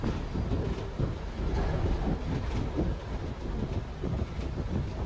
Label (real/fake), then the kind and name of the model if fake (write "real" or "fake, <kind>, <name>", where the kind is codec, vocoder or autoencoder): real